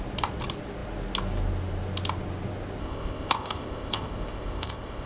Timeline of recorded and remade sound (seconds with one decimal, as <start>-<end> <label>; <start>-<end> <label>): 0.0-2.8 recorded; 2.8-5.1 remade